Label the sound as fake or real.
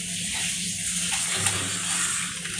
real